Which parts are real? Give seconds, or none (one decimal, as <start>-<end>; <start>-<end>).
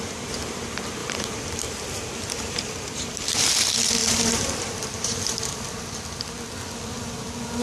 0.0-1.0; 3.5-4.0; 5.2-7.6